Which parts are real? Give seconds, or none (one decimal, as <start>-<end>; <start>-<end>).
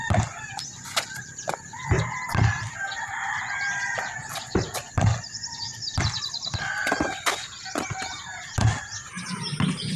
0.0-10.0